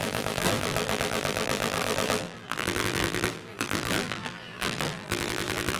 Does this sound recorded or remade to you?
remade